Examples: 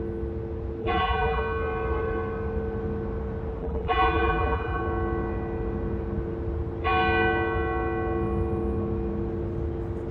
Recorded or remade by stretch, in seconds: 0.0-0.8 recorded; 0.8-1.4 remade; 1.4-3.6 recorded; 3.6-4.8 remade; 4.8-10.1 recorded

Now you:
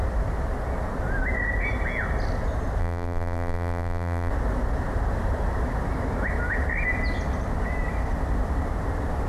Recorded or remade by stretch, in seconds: 0.0-2.8 recorded; 2.8-4.3 remade; 4.3-9.3 recorded

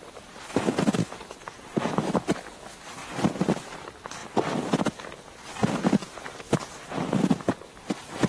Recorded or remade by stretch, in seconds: 0.0-8.3 recorded

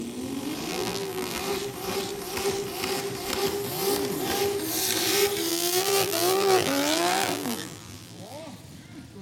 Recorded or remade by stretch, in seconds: 0.0-0.7 recorded; 0.7-1.4 remade; 1.4-5.5 recorded; 5.5-8.4 remade; 8.4-9.2 recorded

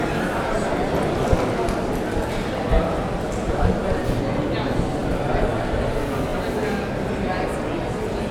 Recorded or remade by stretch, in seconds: 0.0-8.3 recorded

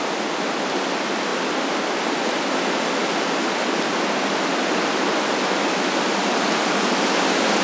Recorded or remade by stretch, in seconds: 0.0-7.6 recorded

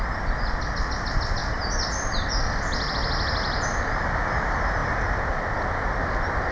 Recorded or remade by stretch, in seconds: 0.0-6.5 recorded

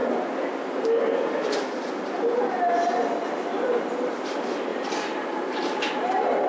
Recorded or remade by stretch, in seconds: 0.0-6.5 recorded